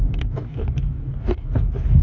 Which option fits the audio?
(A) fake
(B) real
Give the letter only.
A